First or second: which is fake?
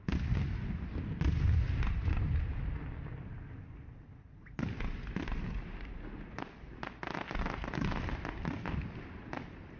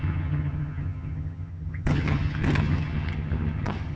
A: second